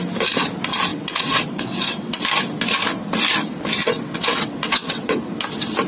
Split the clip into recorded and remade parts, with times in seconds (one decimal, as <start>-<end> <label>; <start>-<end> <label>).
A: 0.0-0.9 recorded; 0.9-2.2 remade; 2.2-3.8 recorded; 3.8-5.2 remade; 5.2-5.9 recorded